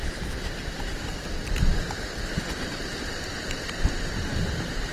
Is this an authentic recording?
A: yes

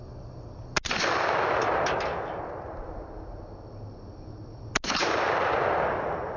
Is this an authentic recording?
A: yes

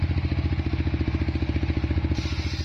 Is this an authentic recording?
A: yes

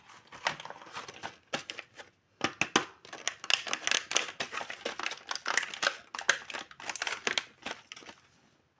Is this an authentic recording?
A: yes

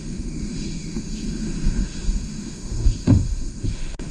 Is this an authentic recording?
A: no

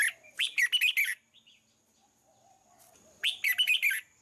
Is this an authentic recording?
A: yes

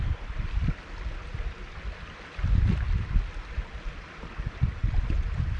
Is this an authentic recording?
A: yes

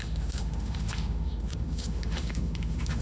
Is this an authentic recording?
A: no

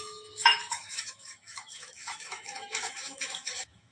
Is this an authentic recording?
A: no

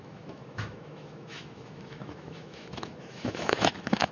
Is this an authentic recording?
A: no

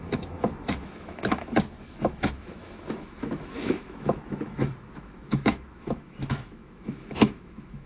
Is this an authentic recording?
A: no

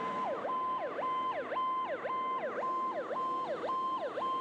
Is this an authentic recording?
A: yes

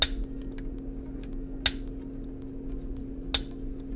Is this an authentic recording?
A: yes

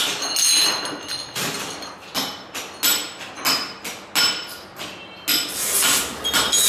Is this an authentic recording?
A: yes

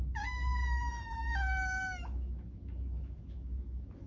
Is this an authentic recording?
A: no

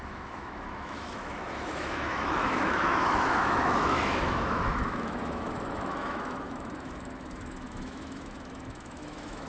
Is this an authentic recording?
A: no